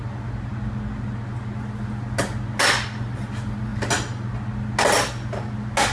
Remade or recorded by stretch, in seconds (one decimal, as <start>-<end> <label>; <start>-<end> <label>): 0.0-5.9 recorded